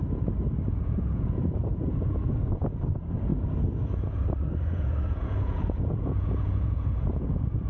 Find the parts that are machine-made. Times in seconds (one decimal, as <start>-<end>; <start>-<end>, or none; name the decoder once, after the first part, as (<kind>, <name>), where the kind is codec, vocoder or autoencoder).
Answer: 0.7-3.3 (vocoder, Vocos); 4.6-7.7

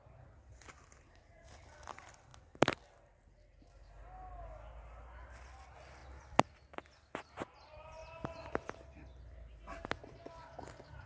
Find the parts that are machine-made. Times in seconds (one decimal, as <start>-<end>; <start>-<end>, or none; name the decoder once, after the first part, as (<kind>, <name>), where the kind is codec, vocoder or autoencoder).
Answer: none

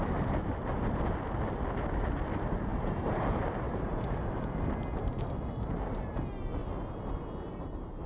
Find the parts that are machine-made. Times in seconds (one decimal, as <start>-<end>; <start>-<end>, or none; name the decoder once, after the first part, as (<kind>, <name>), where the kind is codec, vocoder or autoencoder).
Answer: 2.7-3.9 (vocoder, BigVGAN v2)

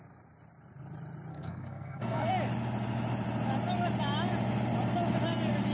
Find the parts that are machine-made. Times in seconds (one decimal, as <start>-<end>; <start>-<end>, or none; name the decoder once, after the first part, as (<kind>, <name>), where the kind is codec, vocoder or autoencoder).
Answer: 1.3-2.3 (codec, SNAC)

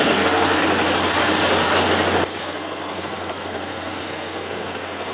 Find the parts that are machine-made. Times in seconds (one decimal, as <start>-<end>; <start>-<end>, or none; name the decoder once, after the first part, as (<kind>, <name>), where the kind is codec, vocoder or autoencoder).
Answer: 0.0-0.6 (codec, SNAC); 2.4-5.1

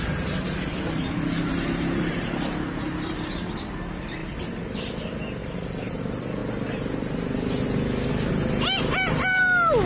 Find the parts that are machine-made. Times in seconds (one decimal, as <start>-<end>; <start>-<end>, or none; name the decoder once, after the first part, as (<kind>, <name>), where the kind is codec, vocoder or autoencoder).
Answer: 1.5-3.6 (vocoder, BigVGAN v2); 5.4-6.0